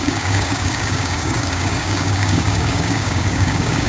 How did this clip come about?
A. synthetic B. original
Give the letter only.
A